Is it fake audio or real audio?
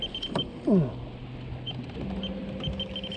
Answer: real